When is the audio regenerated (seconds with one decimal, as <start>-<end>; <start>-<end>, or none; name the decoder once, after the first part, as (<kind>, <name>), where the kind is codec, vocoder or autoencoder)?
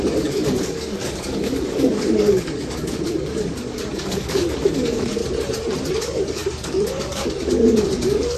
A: 0.0-5.2 (codec, DAC); 6.0-8.4